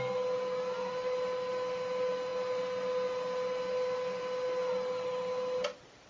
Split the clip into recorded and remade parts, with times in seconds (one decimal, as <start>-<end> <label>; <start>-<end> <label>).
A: 0.0-6.1 recorded

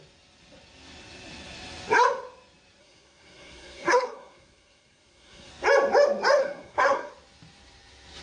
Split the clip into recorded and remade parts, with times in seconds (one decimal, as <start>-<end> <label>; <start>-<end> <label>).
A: 0.0-2.8 recorded; 2.8-5.5 remade; 5.5-6.4 recorded; 6.4-7.1 remade; 7.1-8.2 recorded

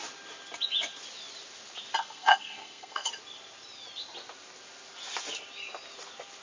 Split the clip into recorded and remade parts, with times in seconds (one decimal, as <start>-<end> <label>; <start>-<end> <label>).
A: 0.0-2.0 recorded; 2.0-3.1 remade; 3.1-6.4 recorded

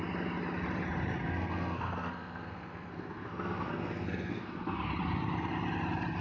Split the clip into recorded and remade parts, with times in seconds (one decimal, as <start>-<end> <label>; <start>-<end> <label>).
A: 0.0-1.2 recorded; 1.2-4.9 remade; 4.9-6.2 recorded

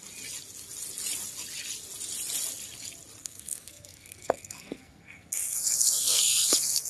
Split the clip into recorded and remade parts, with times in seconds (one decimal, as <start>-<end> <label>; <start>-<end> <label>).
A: 0.0-3.2 recorded; 3.2-6.9 remade

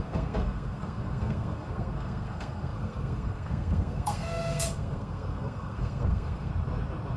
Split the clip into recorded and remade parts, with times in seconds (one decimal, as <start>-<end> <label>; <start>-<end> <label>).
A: 0.0-6.5 remade; 6.5-7.2 recorded

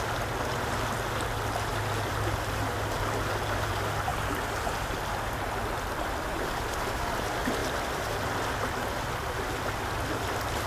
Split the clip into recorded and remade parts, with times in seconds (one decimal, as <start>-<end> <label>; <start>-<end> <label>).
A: 0.0-10.7 recorded